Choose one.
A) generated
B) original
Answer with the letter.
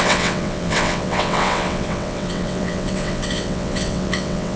A